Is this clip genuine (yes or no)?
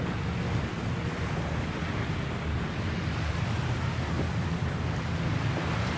yes